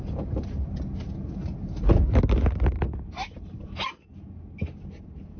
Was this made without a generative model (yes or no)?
yes